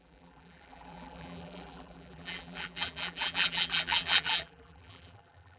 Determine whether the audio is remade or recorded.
remade